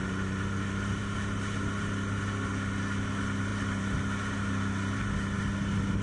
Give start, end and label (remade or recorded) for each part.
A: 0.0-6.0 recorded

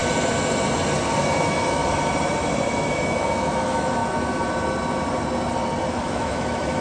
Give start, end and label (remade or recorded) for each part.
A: 0.0-1.2 recorded; 1.2-1.8 remade; 1.8-2.9 recorded; 2.9-4.0 remade; 4.0-5.9 recorded; 5.9-6.8 remade

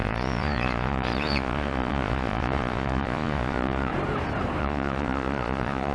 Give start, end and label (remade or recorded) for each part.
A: 0.0-3.9 remade; 3.9-4.6 recorded; 4.6-5.9 remade